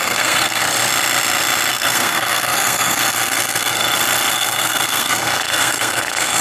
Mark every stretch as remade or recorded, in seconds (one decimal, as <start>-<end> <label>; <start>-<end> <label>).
0.0-0.6 remade; 0.6-1.7 recorded; 1.7-3.8 remade; 3.8-4.3 recorded; 4.3-6.4 remade